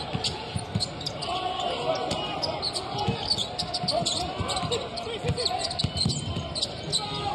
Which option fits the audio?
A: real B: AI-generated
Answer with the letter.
A